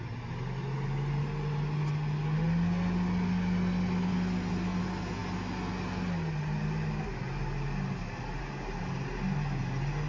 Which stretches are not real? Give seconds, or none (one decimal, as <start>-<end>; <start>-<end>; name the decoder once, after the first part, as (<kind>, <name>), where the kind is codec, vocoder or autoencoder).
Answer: none